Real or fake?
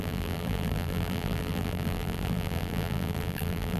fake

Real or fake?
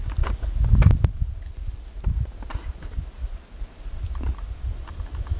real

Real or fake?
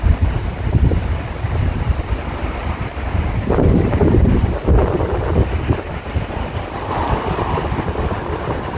real